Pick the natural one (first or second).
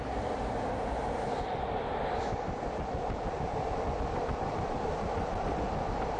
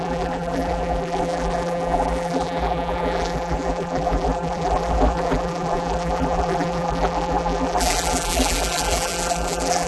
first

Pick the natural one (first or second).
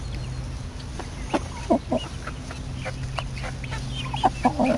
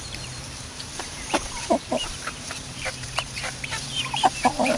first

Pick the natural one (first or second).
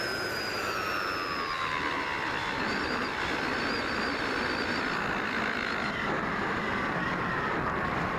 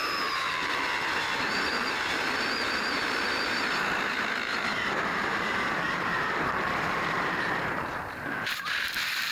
first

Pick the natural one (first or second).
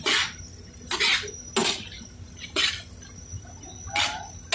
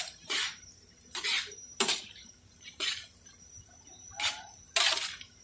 first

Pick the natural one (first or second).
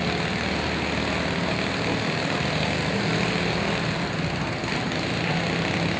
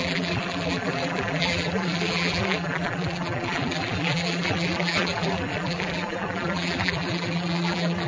first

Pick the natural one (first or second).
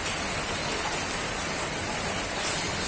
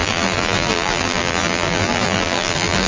first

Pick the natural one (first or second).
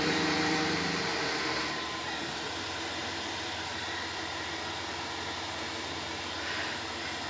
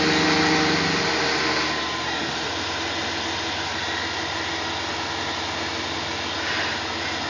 second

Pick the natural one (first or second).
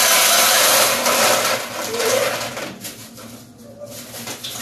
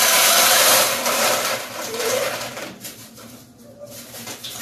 first